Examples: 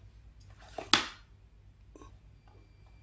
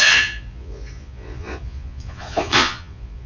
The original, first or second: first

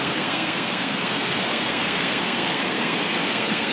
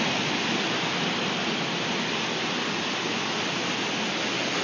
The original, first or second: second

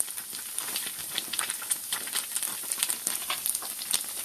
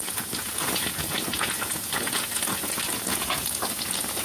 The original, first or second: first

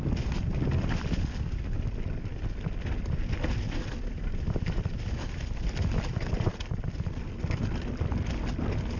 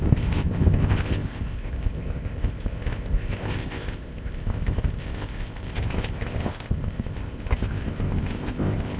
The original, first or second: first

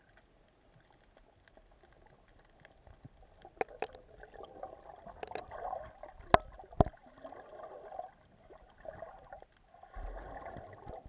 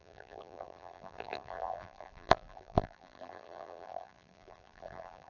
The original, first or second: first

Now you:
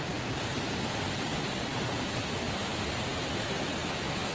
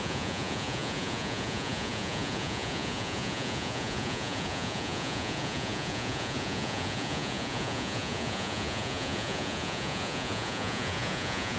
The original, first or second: first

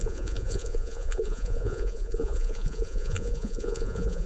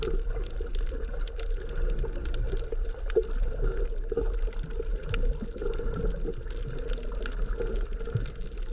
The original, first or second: second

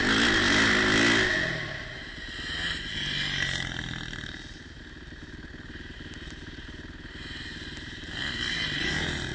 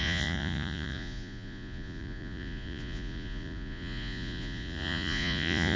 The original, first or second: first